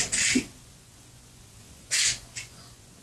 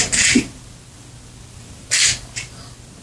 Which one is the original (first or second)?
second